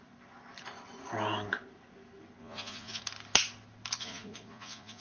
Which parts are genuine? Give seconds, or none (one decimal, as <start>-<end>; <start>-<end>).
0.0-2.4; 3.0-4.0